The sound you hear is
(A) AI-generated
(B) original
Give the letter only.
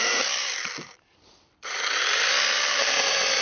A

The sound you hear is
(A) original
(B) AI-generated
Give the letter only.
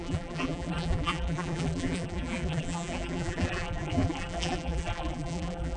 B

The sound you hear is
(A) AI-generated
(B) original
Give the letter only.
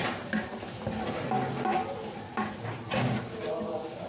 B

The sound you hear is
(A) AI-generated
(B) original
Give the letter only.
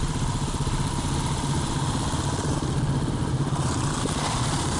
A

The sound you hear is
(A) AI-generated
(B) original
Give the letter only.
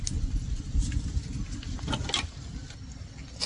B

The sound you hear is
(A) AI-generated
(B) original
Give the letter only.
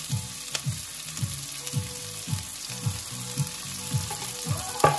B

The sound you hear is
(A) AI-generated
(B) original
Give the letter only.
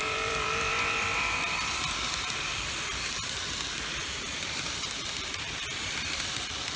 A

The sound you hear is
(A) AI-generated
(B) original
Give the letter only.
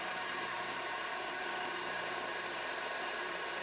A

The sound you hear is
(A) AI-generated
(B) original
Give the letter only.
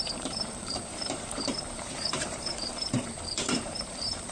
A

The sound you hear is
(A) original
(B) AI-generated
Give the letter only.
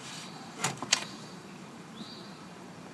B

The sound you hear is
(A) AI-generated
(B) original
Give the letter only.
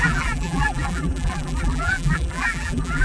A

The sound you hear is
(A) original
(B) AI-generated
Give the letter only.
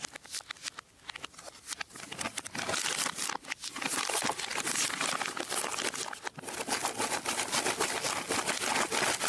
A